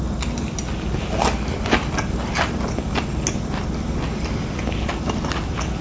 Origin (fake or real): real